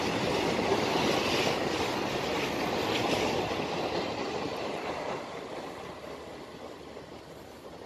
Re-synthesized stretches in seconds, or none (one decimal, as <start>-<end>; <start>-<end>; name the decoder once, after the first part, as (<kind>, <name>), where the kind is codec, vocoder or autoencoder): 4.2-5.2 (vocoder, BigVGAN v2)

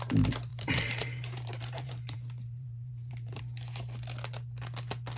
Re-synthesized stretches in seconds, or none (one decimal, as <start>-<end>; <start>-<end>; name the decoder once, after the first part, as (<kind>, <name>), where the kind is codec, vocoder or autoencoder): 0.5-3.4 (vocoder, BigVGAN v2)